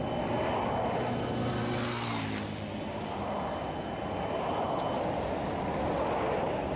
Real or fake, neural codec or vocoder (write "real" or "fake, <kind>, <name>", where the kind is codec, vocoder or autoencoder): real